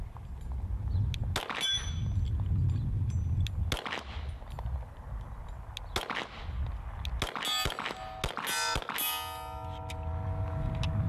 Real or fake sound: real